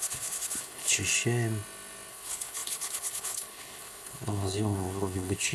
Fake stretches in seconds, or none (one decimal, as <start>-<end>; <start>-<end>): 0.0-1.0; 2.1-5.5